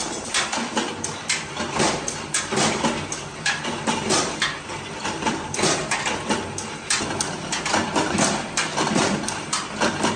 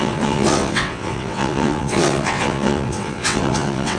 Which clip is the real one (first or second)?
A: first